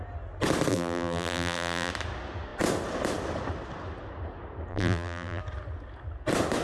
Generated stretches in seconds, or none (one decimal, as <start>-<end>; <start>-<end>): 0.7-1.9; 4.7-5.4